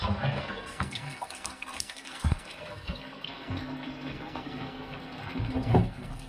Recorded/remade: remade